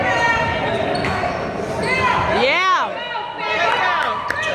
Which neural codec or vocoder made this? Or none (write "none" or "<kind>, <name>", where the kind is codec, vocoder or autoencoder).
none